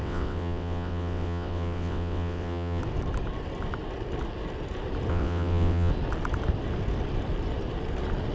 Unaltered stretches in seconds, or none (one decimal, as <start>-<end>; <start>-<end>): 2.8-5.1; 5.9-8.3